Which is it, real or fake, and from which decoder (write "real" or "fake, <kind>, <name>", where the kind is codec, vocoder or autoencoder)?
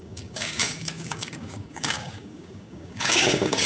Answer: fake, codec, DAC